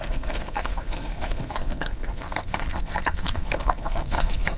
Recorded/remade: remade